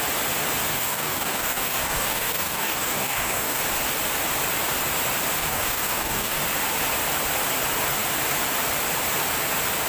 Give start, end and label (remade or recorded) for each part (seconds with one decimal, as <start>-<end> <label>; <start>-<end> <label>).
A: 0.0-0.7 recorded; 0.7-3.6 remade; 3.6-5.4 recorded; 5.4-6.4 remade; 6.4-9.9 recorded